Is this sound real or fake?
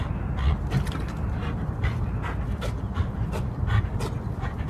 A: real